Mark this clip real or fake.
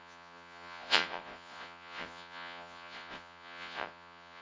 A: fake